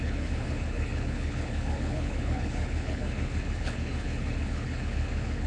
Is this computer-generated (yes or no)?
yes